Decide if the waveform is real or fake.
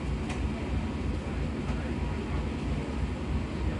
real